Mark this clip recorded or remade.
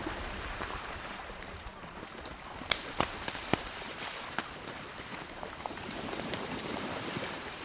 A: remade